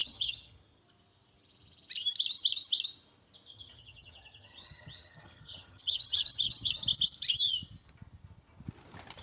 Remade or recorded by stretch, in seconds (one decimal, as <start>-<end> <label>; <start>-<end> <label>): 0.0-0.8 remade; 0.8-3.5 recorded; 3.5-6.7 remade; 6.7-9.2 recorded